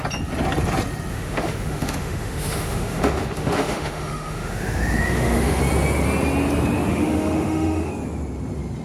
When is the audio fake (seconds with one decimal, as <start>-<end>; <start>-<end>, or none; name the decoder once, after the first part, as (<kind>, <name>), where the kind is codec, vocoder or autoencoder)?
1.1-5.6 (autoencoder, DAC-VAE); 6.9-7.9